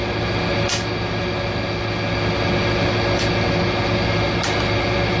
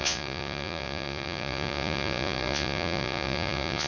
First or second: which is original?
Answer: first